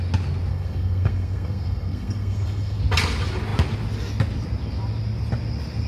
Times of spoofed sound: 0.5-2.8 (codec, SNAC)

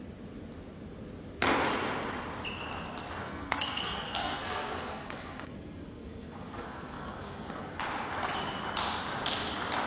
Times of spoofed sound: 3.2-7.8 (codec, SNAC)

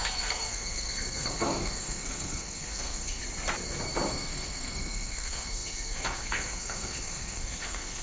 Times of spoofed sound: 0.0-3.2 (codec, SNAC); 4.1-8.0

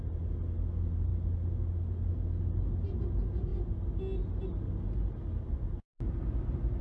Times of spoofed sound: none

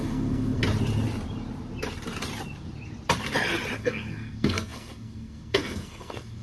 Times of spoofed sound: 0.0-0.6 (codec, SNAC); 3.8-6.4

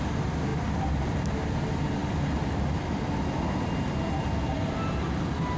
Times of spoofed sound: none

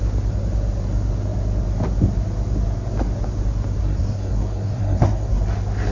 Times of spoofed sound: 3.8-5.4 (codec, SNAC)